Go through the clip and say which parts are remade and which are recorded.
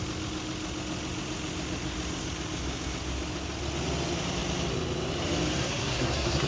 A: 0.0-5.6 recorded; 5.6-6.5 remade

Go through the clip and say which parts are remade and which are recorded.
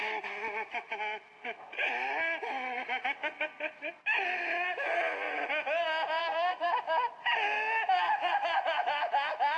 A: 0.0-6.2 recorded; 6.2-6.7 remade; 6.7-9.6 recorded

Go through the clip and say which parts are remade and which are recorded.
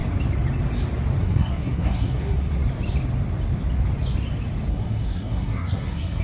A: 0.0-1.2 recorded; 1.2-2.6 remade; 2.6-4.7 recorded; 4.7-6.2 remade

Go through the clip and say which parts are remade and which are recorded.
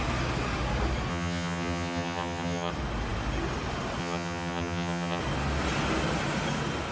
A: 0.0-1.1 recorded; 1.1-2.7 remade; 2.7-4.0 recorded; 4.0-5.2 remade; 5.2-6.9 recorded